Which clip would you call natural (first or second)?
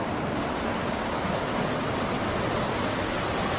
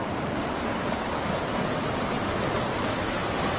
first